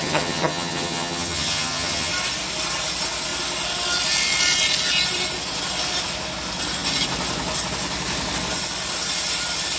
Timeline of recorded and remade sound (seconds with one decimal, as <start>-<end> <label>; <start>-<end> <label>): 0.0-2.1 remade; 2.1-9.8 recorded